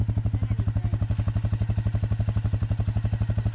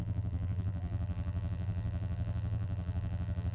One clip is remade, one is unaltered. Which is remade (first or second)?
second